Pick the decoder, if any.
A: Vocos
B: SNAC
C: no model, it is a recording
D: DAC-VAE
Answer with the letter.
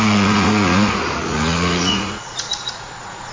A